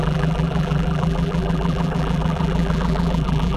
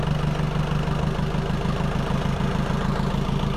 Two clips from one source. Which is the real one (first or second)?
second